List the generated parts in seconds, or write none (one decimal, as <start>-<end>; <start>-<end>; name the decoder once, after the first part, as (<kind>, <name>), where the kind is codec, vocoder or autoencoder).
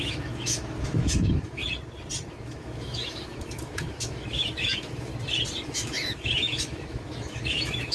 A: 0.0-1.6 (autoencoder, DAC-VAE); 2.3-5.1; 5.6-7.9